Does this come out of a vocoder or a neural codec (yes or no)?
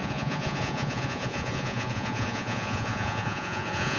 yes